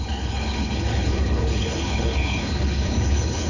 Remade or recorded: remade